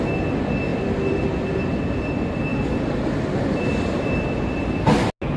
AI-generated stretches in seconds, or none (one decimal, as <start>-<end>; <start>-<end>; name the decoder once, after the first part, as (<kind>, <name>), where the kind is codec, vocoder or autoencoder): none